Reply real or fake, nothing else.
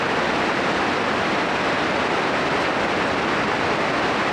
real